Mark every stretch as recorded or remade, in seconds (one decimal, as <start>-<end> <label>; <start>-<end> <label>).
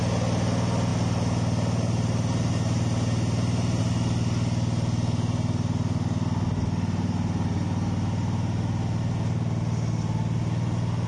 0.0-11.1 recorded